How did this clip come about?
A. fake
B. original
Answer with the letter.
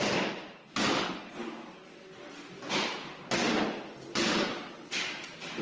B